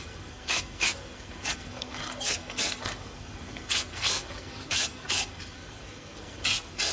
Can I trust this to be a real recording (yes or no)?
no